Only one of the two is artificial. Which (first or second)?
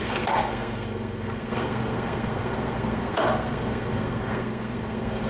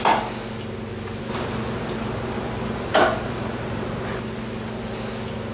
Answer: first